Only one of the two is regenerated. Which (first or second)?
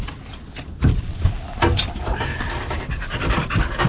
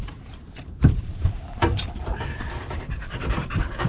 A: second